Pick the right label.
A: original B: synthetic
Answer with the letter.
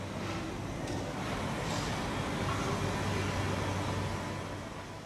A